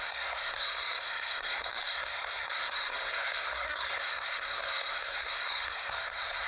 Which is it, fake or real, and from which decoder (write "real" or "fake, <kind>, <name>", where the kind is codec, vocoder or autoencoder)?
fake, codec, SNAC